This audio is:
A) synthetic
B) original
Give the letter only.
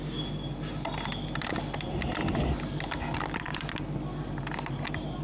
B